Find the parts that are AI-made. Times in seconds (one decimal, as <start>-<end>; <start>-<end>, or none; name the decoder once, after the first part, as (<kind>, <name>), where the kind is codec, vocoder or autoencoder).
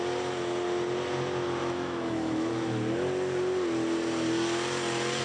1.6-2.5 (autoencoder, DAC-VAE)